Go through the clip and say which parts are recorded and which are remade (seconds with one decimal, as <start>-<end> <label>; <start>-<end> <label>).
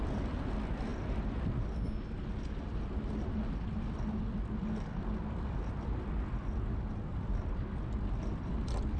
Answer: 0.0-9.0 recorded